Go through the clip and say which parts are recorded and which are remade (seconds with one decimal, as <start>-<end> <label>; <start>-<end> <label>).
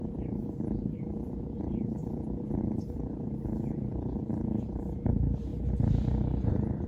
0.0-5.5 remade; 5.5-6.5 recorded; 6.5-6.9 remade